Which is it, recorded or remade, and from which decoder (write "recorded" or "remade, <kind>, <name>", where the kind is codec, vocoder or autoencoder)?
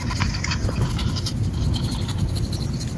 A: recorded